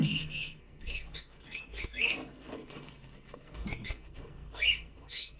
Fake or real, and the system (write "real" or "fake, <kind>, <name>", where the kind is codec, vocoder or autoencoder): fake, codec, SNAC